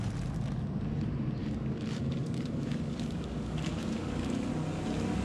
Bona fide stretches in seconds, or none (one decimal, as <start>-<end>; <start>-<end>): 0.0-1.4; 4.5-5.2